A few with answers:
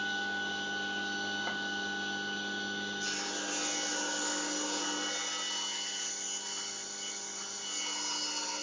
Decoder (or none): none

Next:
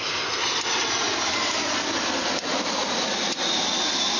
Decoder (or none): none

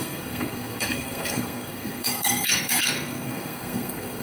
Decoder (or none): codec, SNAC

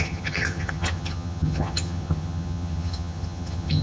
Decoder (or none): vocoder, HiFi-GAN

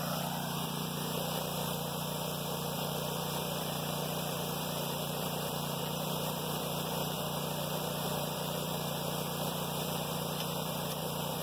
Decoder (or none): vocoder, BigVGAN v2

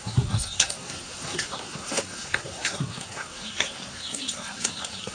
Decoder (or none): codec, SNAC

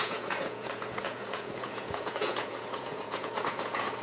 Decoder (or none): vocoder, Vocos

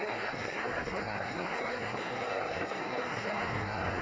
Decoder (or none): codec, SNAC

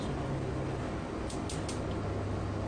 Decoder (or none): none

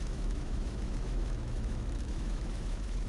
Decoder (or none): autoencoder, DAC-VAE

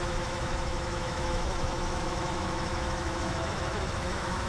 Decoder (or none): autoencoder, DAC-VAE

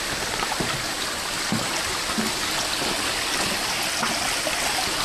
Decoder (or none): none